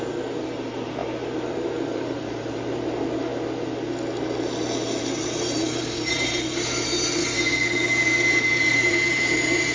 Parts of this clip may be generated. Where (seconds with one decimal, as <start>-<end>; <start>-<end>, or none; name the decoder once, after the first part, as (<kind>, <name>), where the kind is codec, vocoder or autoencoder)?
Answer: 0.0-3.3 (vocoder, BigVGAN v2); 5.0-7.2; 8.7-9.7